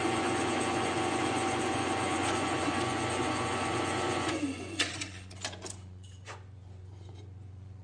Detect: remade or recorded remade